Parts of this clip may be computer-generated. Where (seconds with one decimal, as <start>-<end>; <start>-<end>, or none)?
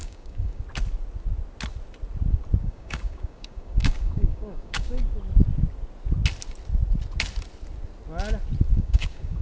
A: 0.0-0.6; 2.6-5.0; 8.7-9.4